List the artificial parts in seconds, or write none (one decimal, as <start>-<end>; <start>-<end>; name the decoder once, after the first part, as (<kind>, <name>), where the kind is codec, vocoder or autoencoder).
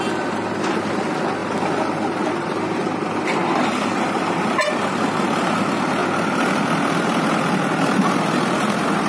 none